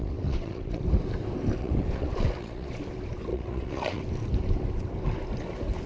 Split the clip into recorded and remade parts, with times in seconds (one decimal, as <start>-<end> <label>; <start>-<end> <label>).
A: 0.0-0.8 remade; 0.8-1.6 recorded; 1.6-2.8 remade; 2.8-3.3 recorded; 3.3-4.0 remade; 4.0-5.9 recorded